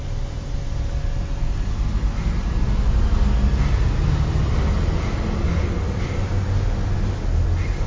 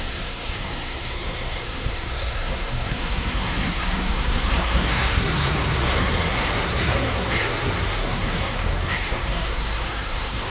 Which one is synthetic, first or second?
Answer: second